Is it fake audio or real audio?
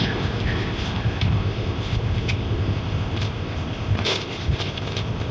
fake